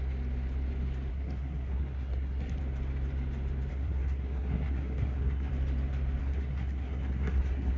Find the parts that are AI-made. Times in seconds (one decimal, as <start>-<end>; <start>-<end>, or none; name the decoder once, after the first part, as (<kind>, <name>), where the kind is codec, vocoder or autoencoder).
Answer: 1.1-2.6 (codec, SNAC); 3.7-5.5; 6.2-7.8